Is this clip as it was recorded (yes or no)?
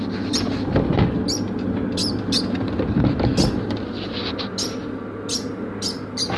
yes